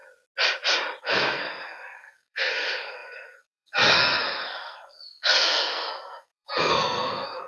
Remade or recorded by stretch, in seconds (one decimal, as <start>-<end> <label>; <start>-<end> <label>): 0.0-1.0 recorded; 1.0-7.5 remade